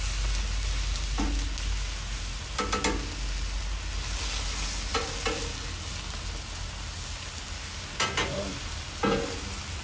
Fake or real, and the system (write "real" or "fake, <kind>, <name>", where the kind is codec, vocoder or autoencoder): real